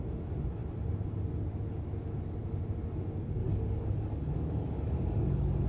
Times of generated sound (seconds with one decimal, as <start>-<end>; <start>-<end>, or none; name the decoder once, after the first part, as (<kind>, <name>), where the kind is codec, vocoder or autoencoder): 3.4-5.7 (codec, DAC)